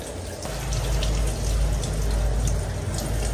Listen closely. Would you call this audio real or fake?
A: real